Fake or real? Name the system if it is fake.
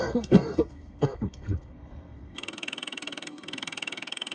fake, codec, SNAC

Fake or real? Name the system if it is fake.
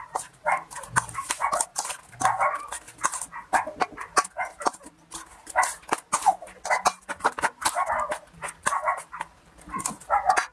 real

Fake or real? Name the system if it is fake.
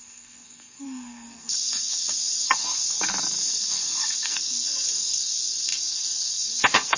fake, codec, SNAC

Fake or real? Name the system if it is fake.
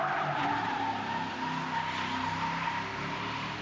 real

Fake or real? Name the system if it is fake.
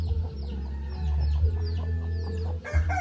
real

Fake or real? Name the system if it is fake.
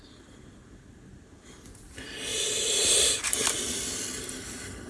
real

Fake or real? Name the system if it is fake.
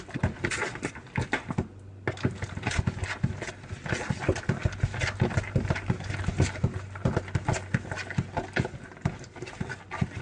real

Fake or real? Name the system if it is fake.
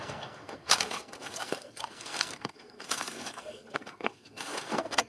fake, codec, SNAC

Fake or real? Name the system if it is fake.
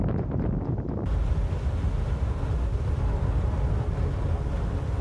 real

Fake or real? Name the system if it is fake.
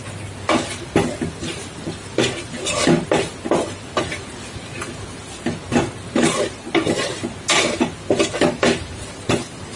real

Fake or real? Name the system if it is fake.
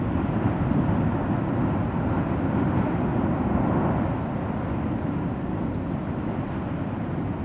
real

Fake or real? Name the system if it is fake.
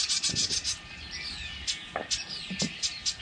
real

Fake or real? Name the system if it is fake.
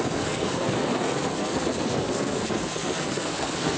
fake, codec, SNAC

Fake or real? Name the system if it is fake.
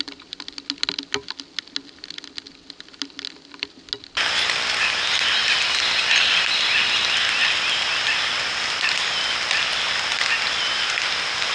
real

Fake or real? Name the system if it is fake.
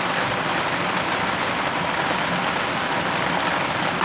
real